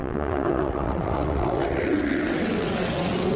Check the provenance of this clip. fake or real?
fake